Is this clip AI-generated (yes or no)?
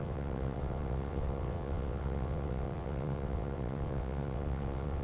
yes